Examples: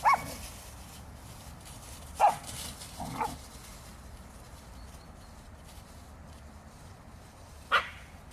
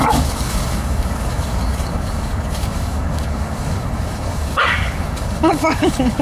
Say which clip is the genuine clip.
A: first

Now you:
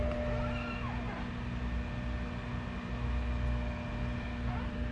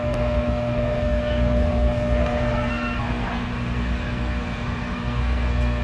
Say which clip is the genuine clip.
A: first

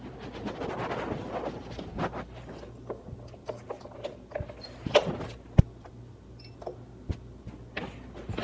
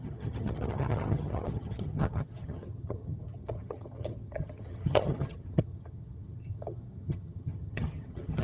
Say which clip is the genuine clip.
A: first